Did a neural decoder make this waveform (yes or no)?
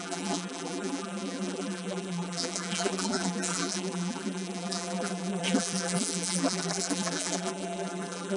yes